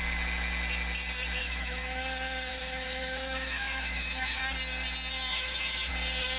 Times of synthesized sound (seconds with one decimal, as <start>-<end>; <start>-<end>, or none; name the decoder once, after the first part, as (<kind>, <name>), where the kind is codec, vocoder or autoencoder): 1.4-2.0 (autoencoder, DAC-VAE); 2.5-4.4; 5.3-5.9